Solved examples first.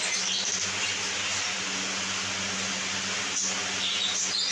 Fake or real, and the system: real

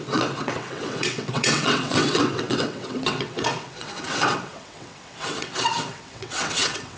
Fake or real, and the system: fake, vocoder, WaveNeXt